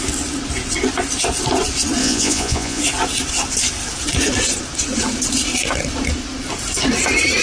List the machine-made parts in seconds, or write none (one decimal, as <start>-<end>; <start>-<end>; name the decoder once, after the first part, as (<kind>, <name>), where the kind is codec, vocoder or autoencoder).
2.0-2.8 (vocoder, Vocos)